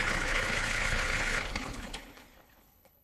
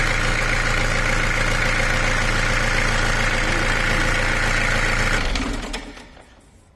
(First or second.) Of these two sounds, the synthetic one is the first